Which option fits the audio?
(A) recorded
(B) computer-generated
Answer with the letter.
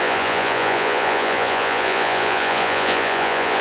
B